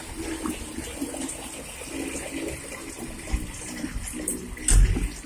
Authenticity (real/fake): real